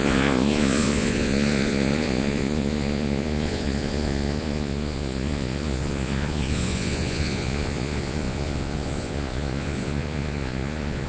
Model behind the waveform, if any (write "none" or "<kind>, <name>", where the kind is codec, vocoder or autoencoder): vocoder, Vocos